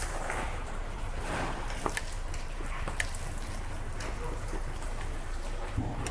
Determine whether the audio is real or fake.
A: fake